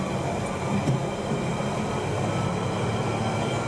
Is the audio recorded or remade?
recorded